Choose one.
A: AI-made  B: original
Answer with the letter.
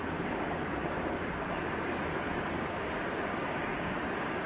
A